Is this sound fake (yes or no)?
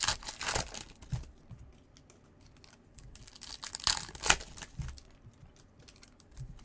no